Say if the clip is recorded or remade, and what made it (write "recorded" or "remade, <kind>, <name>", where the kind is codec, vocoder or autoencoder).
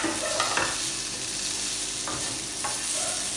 recorded